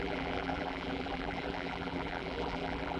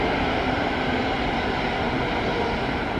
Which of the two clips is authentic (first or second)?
second